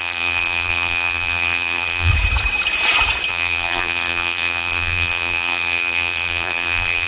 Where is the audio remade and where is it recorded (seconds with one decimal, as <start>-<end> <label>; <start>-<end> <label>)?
0.0-2.1 remade; 2.1-3.3 recorded; 3.3-7.1 remade